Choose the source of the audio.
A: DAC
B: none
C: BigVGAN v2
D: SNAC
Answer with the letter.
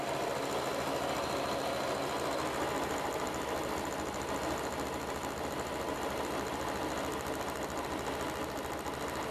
B